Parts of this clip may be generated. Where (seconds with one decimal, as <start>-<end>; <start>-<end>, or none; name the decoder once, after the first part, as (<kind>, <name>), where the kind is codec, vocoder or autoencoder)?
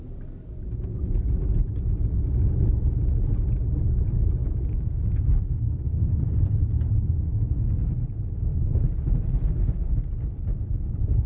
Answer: 4.4-5.6 (codec, DAC)